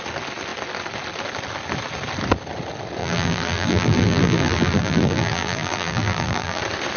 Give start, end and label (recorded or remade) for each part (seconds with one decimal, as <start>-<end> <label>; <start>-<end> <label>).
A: 0.0-3.0 recorded; 3.0-6.6 remade; 6.6-7.0 recorded